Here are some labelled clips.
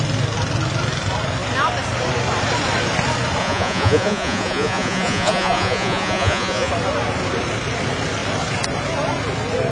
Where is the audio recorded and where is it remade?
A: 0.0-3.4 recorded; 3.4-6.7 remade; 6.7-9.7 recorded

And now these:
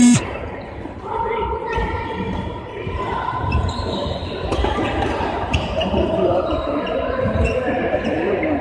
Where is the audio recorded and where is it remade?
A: 0.0-8.6 remade

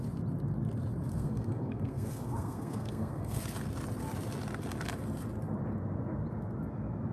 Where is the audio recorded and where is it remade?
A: 0.0-1.1 recorded; 1.1-3.4 remade; 3.4-7.1 recorded

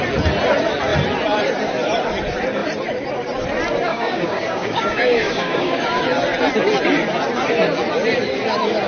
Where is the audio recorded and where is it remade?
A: 0.0-3.9 recorded; 3.9-6.0 remade; 6.0-8.9 recorded

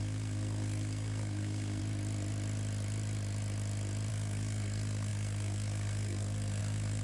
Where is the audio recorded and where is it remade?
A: 0.0-1.8 remade; 1.8-4.1 recorded; 4.1-7.0 remade